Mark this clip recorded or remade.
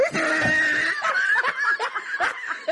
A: recorded